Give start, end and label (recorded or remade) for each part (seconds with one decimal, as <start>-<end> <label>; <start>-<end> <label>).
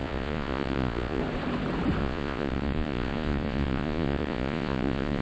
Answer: 0.0-1.2 remade; 1.2-2.0 recorded; 2.0-5.2 remade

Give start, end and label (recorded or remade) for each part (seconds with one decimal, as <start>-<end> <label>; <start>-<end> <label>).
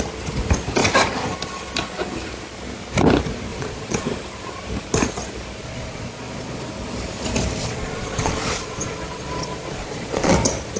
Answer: 0.0-3.5 recorded; 3.5-4.0 remade; 4.0-5.6 recorded; 5.6-6.7 remade; 6.7-7.6 recorded; 7.6-10.3 remade; 10.3-10.8 recorded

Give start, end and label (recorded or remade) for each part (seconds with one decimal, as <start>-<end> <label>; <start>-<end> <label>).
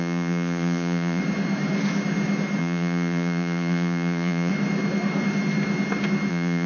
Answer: 0.0-1.2 remade; 1.2-2.6 recorded; 2.6-4.5 remade; 4.5-6.3 recorded; 6.3-6.7 remade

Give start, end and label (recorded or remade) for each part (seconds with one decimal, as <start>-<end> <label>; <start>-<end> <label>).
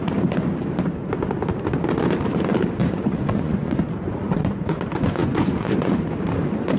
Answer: 0.0-2.8 recorded; 2.8-6.0 remade; 6.0-6.8 recorded